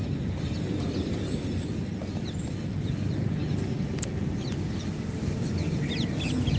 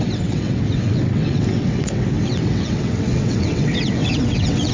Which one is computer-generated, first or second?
second